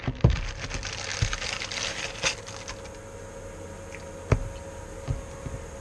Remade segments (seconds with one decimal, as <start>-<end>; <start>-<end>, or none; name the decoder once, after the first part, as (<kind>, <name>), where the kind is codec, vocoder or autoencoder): none